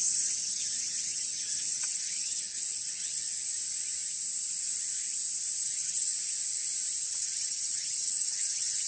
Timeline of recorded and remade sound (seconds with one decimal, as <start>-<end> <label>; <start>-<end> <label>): 0.0-3.3 remade; 3.3-5.6 recorded; 5.6-6.1 remade; 6.1-7.0 recorded; 7.0-8.9 remade